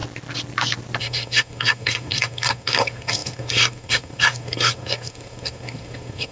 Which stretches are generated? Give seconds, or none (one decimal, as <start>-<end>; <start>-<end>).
1.0-6.3